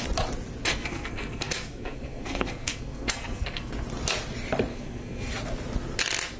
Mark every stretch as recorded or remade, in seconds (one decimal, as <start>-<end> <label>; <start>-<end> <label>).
0.0-0.7 recorded; 0.7-3.7 remade; 3.7-4.7 recorded; 4.7-5.3 remade; 5.3-6.4 recorded